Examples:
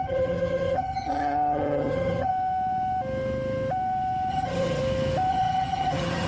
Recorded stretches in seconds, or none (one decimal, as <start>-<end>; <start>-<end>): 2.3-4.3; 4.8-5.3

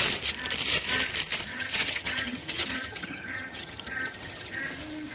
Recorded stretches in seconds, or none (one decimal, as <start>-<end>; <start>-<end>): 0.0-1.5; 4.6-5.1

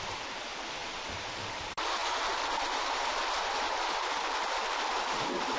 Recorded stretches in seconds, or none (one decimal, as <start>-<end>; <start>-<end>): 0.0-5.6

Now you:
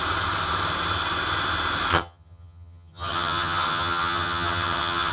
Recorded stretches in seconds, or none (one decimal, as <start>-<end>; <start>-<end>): 0.0-1.9

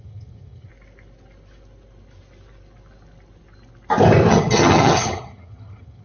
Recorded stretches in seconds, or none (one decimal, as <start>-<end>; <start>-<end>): 0.7-4.3

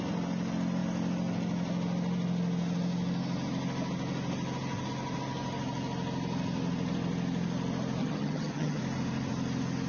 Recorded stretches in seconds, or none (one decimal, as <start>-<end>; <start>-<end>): 0.0-8.0; 8.8-9.9

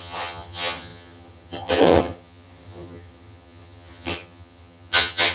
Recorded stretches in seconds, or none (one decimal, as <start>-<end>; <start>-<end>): none